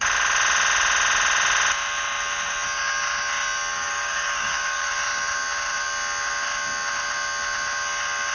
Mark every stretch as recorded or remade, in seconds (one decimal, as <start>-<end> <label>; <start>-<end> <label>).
0.0-3.7 recorded; 3.7-4.9 remade; 4.9-8.3 recorded